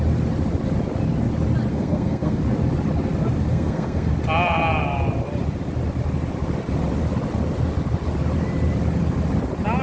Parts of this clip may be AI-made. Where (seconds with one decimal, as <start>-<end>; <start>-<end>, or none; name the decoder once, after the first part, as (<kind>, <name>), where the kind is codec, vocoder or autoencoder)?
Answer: 1.7-2.4 (codec, SNAC); 3.5-4.1